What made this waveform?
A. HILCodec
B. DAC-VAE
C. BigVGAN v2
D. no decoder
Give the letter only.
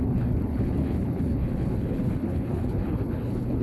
A